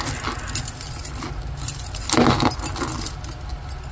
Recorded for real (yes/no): yes